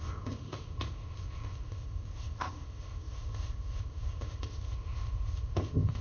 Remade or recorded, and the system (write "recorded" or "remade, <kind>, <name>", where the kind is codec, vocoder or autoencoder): remade, codec, ZipCodec